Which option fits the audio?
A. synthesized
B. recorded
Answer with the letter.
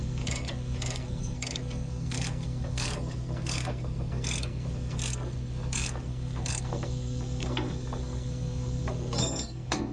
A